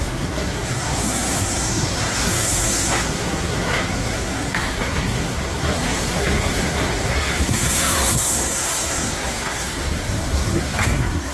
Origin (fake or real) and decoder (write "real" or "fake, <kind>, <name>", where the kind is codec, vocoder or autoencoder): fake, codec, SNAC